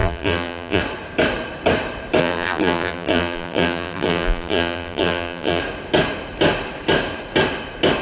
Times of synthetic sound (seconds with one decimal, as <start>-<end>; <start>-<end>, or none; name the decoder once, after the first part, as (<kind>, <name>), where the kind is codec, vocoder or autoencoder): 0.0-0.8 (vocoder, BigVGAN v2); 2.2-5.6